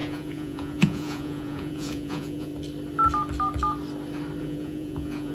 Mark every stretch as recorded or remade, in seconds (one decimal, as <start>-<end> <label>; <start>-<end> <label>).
0.0-2.5 remade; 2.5-4.4 recorded; 4.4-5.3 remade